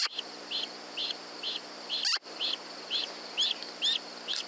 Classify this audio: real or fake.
real